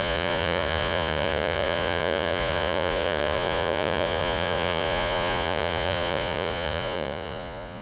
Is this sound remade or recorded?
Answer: remade